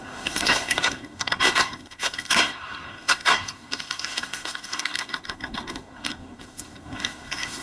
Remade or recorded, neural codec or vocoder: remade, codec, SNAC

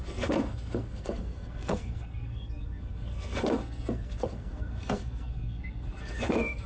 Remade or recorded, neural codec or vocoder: remade, codec, SNAC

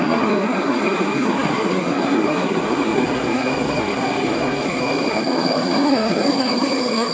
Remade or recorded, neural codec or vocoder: remade, codec, SNAC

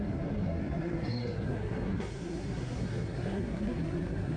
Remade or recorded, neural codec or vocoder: remade, codec, SNAC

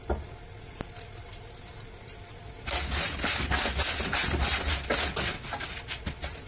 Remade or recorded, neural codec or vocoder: recorded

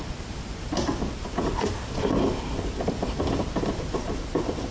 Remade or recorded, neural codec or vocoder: recorded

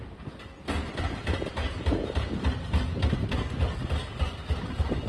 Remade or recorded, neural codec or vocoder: recorded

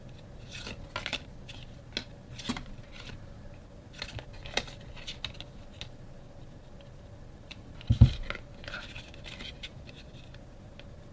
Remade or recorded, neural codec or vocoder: recorded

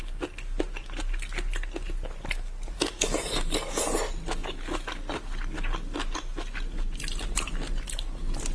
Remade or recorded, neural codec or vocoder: recorded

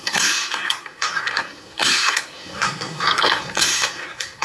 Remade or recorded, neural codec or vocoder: remade, codec, SNAC